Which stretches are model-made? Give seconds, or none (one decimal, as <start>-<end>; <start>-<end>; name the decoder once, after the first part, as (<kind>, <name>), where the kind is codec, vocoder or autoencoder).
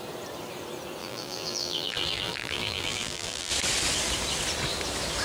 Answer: 1.0-3.5 (vocoder, BigVGAN v2)